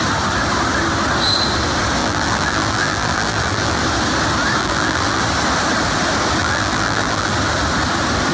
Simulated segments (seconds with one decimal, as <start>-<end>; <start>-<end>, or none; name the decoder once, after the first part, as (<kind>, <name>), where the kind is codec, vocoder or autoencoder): 2.0-3.8 (vocoder, BigVGAN v2); 4.6-5.2; 6.4-7.3